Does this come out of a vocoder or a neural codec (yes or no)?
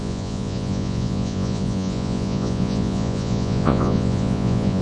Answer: yes